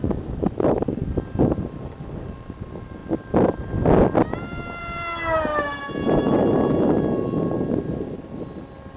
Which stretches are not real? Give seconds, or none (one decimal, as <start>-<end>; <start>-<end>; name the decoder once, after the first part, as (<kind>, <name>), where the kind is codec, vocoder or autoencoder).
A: 0.0-9.0 (vocoder, BigVGAN v2)